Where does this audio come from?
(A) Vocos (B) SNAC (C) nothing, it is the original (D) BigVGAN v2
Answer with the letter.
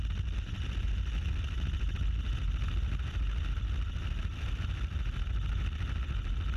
C